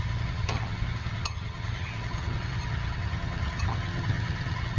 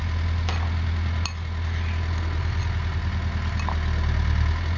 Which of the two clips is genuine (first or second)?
second